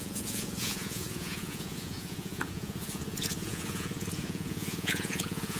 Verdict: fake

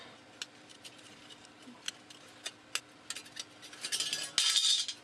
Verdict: real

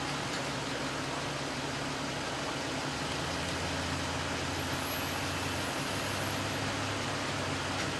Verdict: real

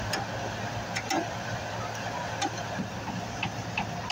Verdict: real